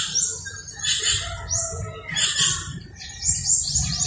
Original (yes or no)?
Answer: no